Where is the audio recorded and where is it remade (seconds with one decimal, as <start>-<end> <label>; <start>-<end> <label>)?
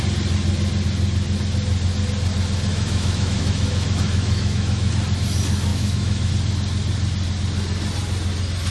0.0-2.7 recorded; 2.7-4.9 remade; 4.9-5.7 recorded; 5.7-6.3 remade; 6.3-8.7 recorded